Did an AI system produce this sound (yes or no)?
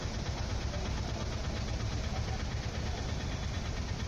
no